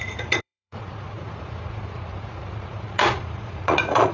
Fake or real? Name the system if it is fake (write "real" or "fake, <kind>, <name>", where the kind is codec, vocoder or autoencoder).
fake, vocoder, Vocos